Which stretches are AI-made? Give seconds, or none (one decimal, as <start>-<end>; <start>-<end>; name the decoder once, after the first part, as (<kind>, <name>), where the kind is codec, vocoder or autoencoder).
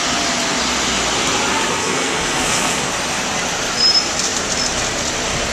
1.8-2.9 (codec, SNAC)